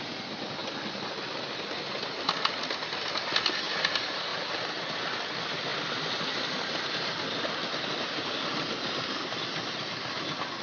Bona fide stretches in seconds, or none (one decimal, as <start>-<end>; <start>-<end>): 0.0-4.3; 4.8-10.6

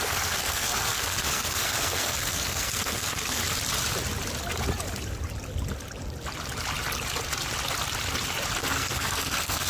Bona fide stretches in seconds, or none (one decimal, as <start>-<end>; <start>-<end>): 3.4-8.6

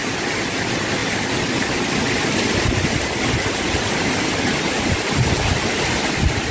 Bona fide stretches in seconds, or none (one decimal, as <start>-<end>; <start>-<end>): 0.0-6.5

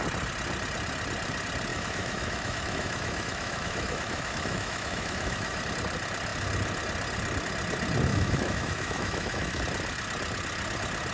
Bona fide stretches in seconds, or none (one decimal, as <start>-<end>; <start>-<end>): 0.0-1.7; 5.6-8.1; 9.6-11.1

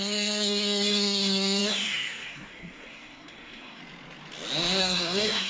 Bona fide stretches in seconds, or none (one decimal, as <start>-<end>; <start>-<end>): 3.8-4.8

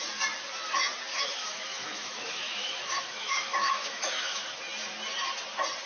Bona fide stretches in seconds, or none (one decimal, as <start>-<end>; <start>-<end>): 0.0-1.1; 4.6-5.9

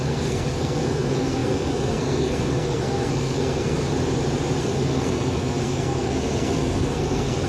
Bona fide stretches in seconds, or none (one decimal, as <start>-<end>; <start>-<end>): 3.9-4.6

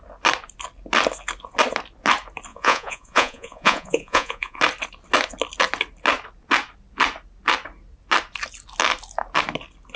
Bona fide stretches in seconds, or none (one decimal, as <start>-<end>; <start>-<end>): 0.0-2.5; 4.6-10.0